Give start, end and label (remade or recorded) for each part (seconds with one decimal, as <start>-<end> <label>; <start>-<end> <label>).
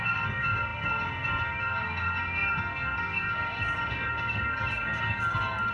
0.0-5.7 remade